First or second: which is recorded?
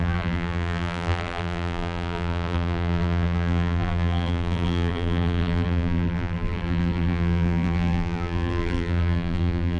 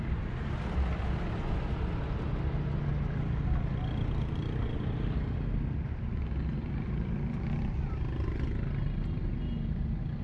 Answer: second